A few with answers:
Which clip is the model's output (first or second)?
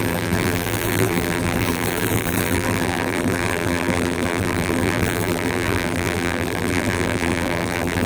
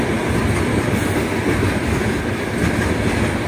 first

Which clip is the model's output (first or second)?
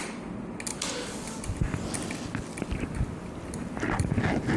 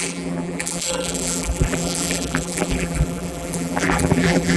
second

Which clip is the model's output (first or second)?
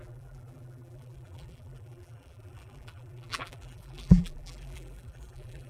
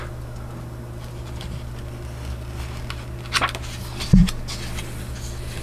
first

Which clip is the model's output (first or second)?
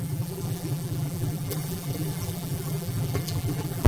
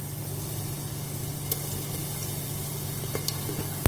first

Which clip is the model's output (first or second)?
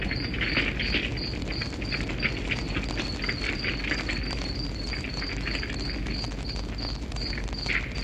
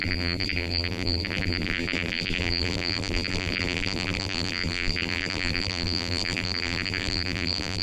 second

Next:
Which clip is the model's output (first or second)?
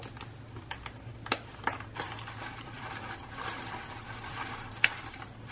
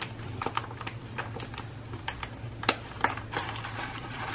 first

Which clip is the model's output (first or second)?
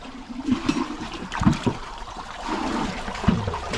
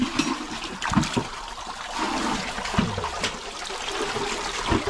first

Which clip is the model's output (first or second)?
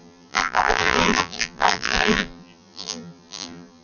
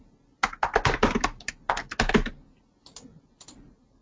first